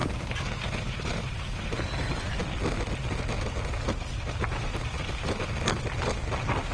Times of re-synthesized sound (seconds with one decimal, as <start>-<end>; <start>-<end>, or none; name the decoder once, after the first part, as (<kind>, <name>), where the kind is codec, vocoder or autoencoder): 0.0-1.8 (vocoder, BigVGAN v2)